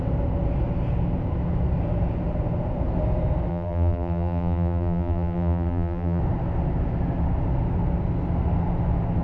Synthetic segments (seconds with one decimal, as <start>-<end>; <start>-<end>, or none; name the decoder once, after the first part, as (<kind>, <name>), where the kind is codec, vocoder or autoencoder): 3.5-6.2 (vocoder, BigVGAN v2)